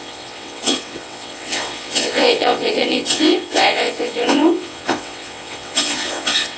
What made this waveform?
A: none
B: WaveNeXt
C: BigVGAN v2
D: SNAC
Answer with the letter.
B